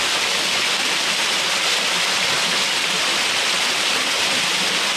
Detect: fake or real real